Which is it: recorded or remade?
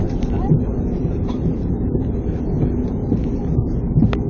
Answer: recorded